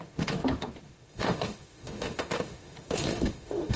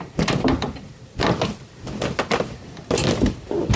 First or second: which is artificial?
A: first